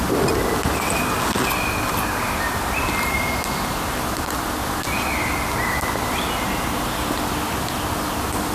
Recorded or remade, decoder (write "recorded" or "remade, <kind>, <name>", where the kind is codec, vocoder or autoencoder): recorded